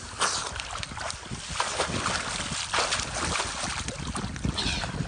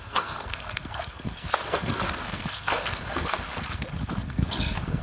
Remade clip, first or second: second